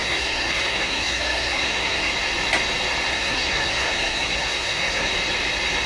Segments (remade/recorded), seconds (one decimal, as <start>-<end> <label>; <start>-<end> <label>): 0.0-2.1 remade; 2.1-3.1 recorded; 3.1-5.1 remade; 5.1-5.9 recorded